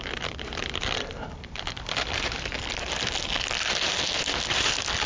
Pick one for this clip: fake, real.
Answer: real